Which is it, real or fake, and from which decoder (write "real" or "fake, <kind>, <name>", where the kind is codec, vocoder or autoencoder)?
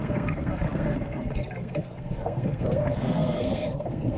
fake, codec, SNAC